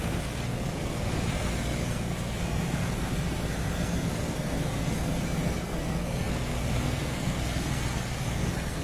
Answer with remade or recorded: remade